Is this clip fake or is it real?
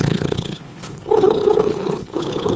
fake